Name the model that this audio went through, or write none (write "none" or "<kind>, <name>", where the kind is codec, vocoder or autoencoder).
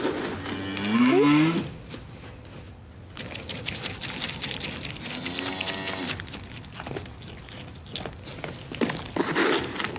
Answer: none